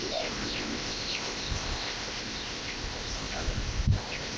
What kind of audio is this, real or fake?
fake